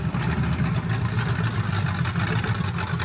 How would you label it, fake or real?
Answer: real